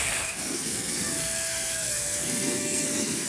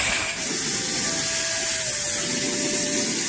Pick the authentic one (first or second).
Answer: second